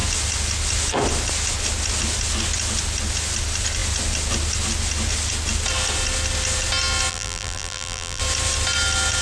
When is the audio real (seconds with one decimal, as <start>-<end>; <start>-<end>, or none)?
0.0-7.1; 8.2-9.2